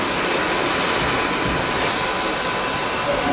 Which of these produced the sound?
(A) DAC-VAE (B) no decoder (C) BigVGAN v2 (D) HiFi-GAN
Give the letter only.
B